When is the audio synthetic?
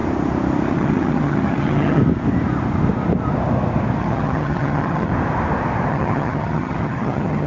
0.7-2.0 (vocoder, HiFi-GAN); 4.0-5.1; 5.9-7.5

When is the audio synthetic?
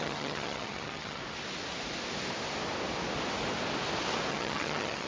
0.0-1.2 (vocoder, HiFi-GAN); 4.3-5.1